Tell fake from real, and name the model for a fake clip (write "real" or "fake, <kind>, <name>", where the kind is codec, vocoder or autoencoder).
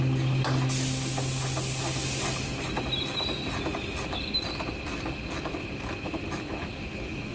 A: real